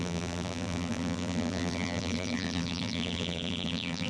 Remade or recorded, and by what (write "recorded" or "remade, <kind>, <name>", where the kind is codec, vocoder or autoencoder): remade, vocoder, BigVGAN v2